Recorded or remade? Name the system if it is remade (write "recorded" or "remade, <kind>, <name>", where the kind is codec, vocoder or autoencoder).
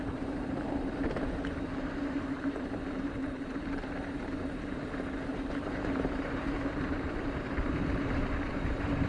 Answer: remade, vocoder, BigVGAN v2